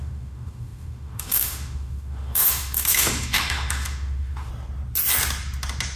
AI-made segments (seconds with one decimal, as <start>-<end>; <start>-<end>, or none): 0.0-4.5